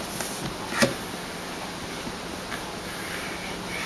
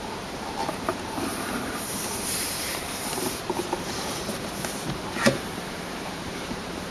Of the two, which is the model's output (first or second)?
second